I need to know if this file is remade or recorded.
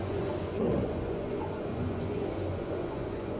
remade